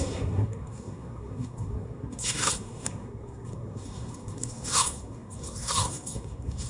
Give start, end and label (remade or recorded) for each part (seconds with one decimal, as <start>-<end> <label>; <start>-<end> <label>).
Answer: 0.0-6.7 remade